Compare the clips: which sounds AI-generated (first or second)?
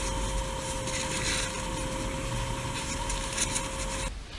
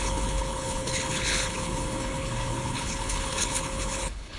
second